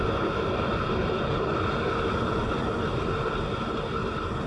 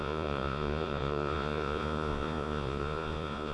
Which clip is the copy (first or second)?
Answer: second